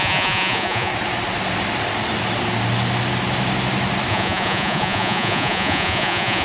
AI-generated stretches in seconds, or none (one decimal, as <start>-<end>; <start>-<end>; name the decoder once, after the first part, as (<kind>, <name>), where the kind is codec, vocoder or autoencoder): 0.0-0.9 (vocoder, Vocos); 4.1-6.4